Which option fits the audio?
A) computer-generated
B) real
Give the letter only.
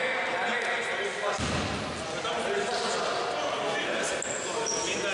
B